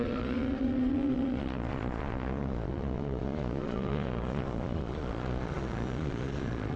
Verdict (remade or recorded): remade